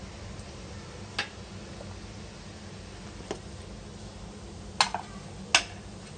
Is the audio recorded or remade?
recorded